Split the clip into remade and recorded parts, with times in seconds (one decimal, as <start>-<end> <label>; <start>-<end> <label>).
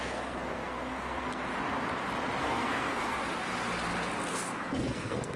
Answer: 0.0-1.5 remade; 1.5-2.4 recorded; 2.4-3.2 remade; 3.2-4.3 recorded; 4.3-5.4 remade